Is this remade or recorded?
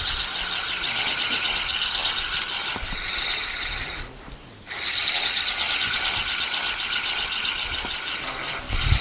recorded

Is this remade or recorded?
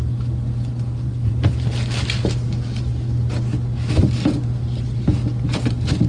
recorded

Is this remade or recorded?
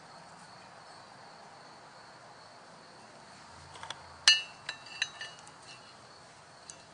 recorded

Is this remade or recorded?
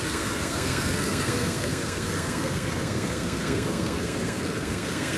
remade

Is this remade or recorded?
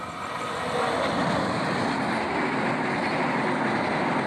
recorded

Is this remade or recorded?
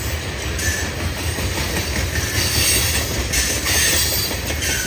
recorded